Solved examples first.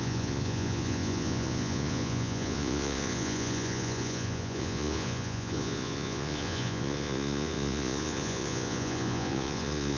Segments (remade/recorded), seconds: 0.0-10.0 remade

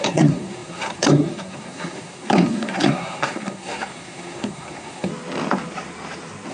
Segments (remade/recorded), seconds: 0.0-5.1 remade; 5.1-6.5 recorded

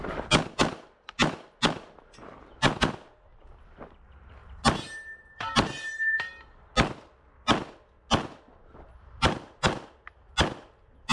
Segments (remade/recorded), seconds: 0.0-11.1 recorded

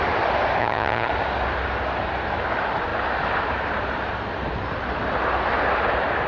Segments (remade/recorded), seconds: 0.0-0.6 recorded; 0.6-1.1 remade; 1.1-6.3 recorded

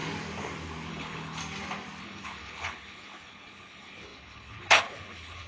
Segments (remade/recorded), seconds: 0.0-0.9 recorded; 0.9-1.4 remade; 1.4-2.0 recorded; 2.0-5.5 remade

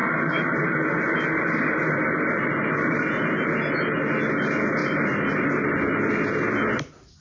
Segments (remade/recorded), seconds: 0.0-3.1 remade; 3.1-4.8 recorded; 4.8-6.1 remade; 6.1-7.2 recorded